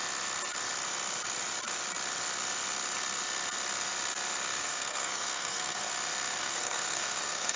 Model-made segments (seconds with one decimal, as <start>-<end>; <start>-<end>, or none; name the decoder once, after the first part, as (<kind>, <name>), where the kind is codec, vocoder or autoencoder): 4.6-5.9 (codec, SNAC); 6.4-7.6